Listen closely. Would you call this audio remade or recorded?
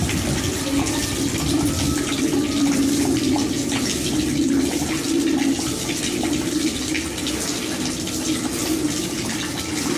recorded